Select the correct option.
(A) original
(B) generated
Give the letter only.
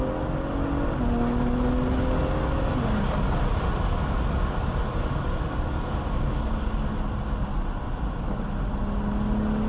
A